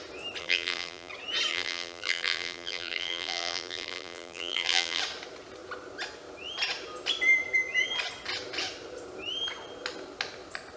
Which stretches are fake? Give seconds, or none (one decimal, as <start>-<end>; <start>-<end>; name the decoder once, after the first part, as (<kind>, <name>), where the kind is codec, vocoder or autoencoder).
0.4-1.1 (vocoder, BigVGAN v2); 1.5-5.0